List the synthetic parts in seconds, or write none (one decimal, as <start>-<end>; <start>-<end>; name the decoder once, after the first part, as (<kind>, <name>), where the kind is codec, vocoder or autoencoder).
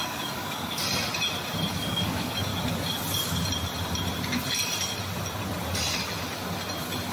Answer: 0.0-0.8 (codec, DAC); 1.7-2.5